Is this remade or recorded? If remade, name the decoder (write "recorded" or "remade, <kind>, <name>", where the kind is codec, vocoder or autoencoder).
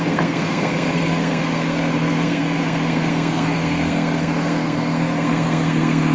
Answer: remade, codec, SNAC